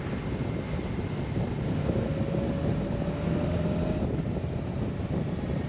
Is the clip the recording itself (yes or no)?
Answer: yes